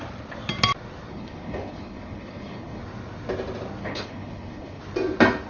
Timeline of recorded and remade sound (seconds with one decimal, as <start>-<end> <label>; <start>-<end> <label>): 0.0-1.1 recorded; 1.1-2.8 remade; 2.8-3.8 recorded; 3.8-4.8 remade; 4.8-5.5 recorded